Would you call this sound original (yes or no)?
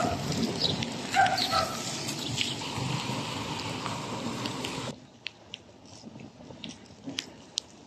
yes